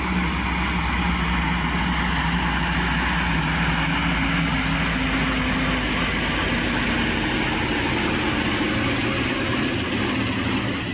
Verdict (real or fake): real